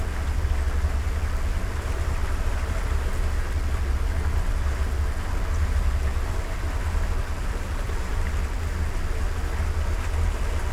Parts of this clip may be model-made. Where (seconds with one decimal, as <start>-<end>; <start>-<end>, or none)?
7.3-8.4